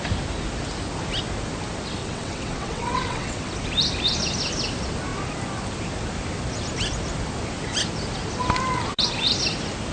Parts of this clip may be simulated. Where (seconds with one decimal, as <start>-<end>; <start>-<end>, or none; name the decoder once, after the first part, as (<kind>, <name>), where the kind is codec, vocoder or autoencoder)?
2.0-3.5 (vocoder, WaveNeXt)